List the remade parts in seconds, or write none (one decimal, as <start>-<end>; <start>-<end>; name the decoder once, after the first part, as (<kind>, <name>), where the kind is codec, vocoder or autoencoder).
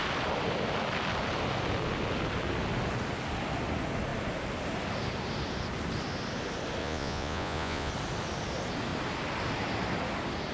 6.8-7.9 (vocoder, Vocos)